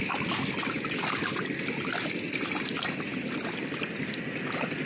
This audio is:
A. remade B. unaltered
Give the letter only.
B